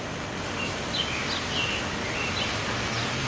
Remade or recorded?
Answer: recorded